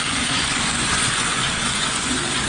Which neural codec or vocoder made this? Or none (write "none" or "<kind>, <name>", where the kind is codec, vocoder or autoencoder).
vocoder, Vocos